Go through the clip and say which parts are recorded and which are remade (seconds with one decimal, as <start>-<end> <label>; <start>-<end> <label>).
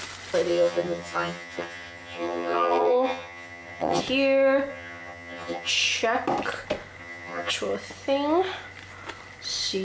0.0-0.5 recorded; 0.5-4.0 remade; 4.0-4.7 recorded; 4.7-5.7 remade; 5.7-7.0 recorded; 7.0-7.5 remade; 7.5-9.8 recorded